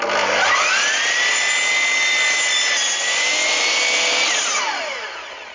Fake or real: real